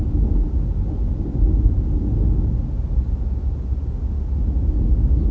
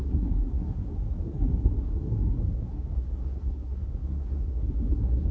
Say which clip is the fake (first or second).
second